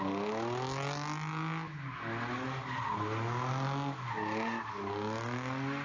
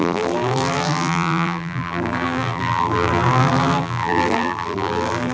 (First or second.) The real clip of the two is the first